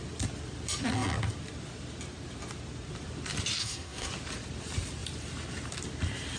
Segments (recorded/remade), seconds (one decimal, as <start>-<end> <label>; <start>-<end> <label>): 0.0-3.6 recorded; 3.6-4.1 remade; 4.1-6.4 recorded

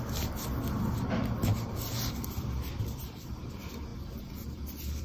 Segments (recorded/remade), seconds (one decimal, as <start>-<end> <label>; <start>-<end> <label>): 0.0-1.5 recorded; 1.5-3.4 remade; 3.4-5.0 recorded

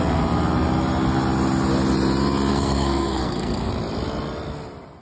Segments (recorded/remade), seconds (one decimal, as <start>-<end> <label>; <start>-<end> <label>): 0.0-2.5 recorded; 2.5-3.7 remade; 3.7-5.0 recorded